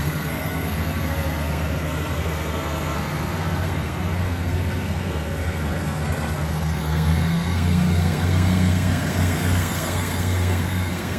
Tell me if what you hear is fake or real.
fake